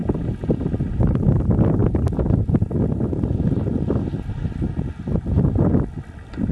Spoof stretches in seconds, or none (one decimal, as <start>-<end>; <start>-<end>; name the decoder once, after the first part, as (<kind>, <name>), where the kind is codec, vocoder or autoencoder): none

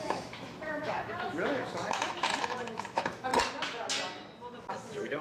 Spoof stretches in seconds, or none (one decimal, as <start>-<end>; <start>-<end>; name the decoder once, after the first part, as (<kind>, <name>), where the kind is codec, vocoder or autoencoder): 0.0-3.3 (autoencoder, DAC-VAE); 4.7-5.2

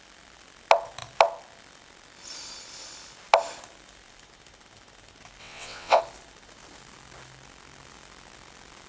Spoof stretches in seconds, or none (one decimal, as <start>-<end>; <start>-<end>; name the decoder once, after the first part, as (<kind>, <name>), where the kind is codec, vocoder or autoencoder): 5.4-6.0 (vocoder, WaveNeXt)

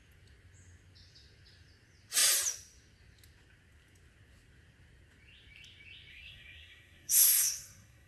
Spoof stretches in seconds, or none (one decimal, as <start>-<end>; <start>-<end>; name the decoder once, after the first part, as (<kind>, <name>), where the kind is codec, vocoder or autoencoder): 6.1-8.1 (codec, SNAC)

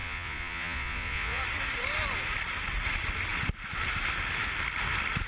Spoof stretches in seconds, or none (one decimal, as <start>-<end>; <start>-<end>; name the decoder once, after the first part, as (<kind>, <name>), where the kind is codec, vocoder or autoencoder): 0.0-1.4 (vocoder, Vocos)